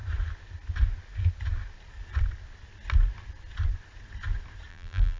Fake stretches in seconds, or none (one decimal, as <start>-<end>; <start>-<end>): 4.7-5.2